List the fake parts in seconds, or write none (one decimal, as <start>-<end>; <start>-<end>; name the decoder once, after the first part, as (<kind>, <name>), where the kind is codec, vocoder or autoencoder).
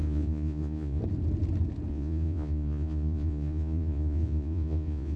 0.0-1.0 (vocoder, Vocos); 1.9-5.2